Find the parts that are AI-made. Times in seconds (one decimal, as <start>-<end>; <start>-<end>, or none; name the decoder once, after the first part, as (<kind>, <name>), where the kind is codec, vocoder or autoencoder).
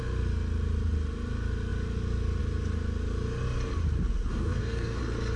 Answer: 4.3-5.0 (codec, DAC)